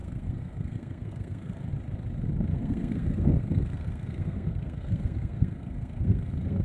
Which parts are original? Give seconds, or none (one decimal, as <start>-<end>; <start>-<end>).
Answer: 1.7-2.5